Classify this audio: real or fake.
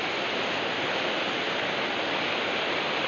real